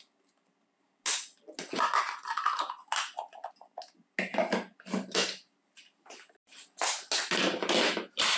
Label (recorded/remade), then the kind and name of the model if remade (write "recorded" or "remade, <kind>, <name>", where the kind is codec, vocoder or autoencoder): recorded